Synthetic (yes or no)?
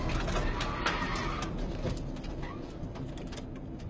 no